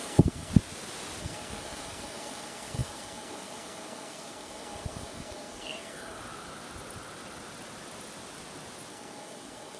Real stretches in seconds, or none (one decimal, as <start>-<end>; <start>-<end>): 0.5-1.2; 6.2-8.9

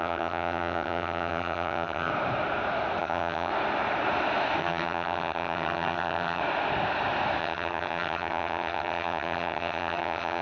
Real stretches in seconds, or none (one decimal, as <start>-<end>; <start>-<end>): 2.1-3.0; 3.5-4.6; 6.4-7.4

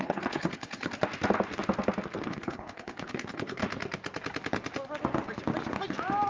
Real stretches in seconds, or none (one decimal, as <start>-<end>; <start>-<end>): 0.9-2.3; 3.6-6.3

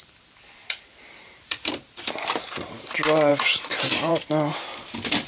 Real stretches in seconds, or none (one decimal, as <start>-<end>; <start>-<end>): 0.0-0.6; 2.9-3.3; 4.1-5.3

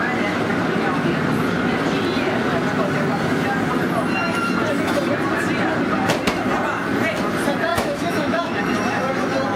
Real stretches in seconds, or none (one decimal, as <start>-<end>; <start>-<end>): 0.0-7.7; 8.6-9.6

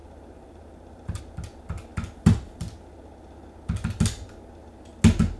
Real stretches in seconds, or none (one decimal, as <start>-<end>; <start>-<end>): 1.2-5.4

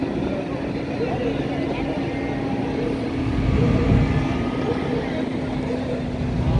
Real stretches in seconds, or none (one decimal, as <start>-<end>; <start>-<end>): 0.0-6.6

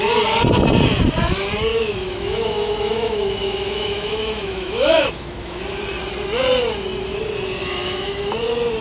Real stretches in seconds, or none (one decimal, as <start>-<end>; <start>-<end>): 0.0-1.7; 5.6-7.6; 8.2-8.8